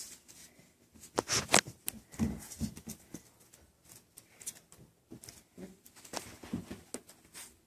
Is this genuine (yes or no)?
yes